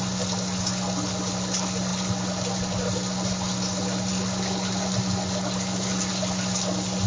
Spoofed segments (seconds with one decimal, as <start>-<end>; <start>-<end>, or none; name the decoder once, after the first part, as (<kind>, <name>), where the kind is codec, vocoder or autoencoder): none